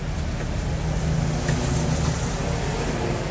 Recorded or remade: recorded